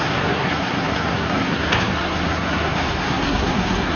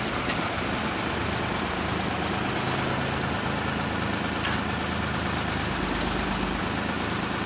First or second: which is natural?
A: second